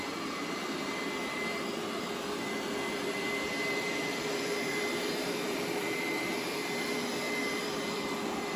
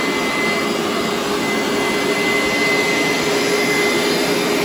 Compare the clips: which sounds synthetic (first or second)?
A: first